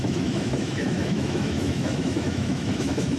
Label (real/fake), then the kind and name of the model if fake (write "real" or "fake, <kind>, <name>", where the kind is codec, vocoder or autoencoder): fake, autoencoder, DAC-VAE